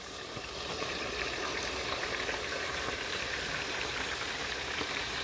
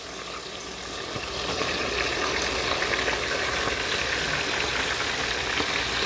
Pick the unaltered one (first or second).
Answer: second